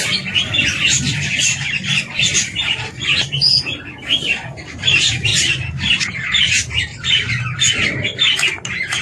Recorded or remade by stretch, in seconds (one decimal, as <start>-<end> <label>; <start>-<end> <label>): 0.0-1.1 recorded; 1.1-2.0 remade; 2.0-6.9 recorded; 6.9-7.7 remade; 7.7-9.0 recorded